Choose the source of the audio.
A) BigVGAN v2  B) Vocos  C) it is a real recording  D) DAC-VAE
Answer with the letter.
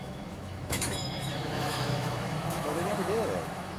D